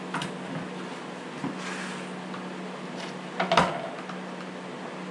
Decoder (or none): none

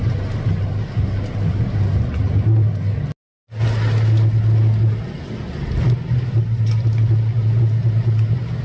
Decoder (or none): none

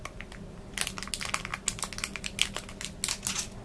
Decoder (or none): none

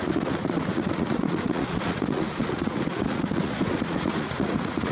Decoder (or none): vocoder, Vocos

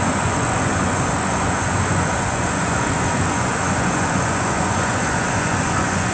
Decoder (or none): vocoder, Vocos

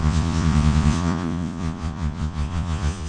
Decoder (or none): vocoder, Vocos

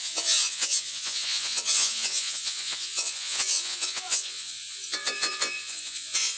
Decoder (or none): vocoder, Vocos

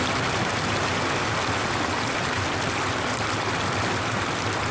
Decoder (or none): none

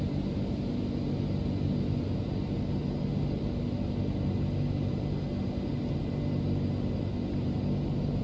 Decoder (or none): none